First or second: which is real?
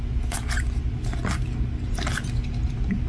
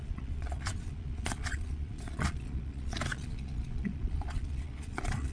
first